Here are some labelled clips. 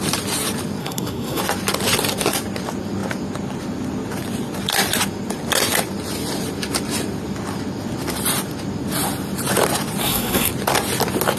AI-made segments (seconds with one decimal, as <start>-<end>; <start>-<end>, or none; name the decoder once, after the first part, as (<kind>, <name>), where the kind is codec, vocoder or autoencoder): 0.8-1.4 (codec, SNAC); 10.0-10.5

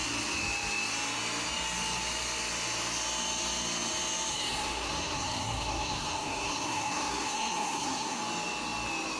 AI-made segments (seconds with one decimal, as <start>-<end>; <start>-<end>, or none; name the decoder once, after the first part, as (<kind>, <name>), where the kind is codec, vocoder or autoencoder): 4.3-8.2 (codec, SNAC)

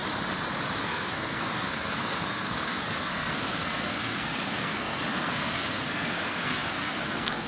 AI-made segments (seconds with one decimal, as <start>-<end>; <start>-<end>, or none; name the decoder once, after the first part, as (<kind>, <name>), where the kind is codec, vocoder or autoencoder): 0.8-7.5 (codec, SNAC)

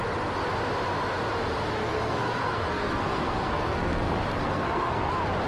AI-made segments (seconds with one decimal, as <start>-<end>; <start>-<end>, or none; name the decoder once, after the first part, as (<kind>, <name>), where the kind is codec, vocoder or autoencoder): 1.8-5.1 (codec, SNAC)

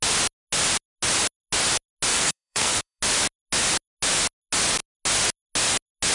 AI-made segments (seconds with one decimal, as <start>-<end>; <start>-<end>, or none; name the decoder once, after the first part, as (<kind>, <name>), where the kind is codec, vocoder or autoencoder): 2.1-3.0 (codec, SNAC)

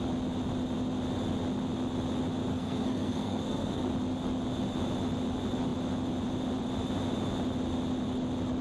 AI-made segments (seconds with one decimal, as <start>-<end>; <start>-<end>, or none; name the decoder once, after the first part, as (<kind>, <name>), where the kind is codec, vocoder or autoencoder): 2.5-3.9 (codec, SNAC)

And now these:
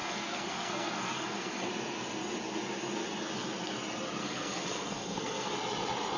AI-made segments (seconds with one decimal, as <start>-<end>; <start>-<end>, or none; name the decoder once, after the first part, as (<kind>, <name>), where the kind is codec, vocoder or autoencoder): 0.0-1.7 (codec, SNAC); 4.2-5.5

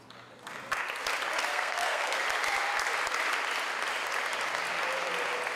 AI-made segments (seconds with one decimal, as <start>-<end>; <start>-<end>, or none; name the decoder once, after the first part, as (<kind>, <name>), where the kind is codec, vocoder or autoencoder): 1.5-2.2 (codec, SNAC)